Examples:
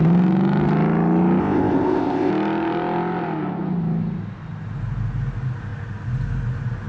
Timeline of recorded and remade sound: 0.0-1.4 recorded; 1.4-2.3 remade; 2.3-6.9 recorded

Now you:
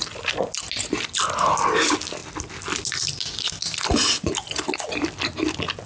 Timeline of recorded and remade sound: 0.0-5.9 recorded